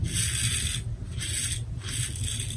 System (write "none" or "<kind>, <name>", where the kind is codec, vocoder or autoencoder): none